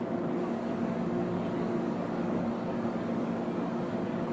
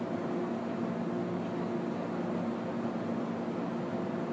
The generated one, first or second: first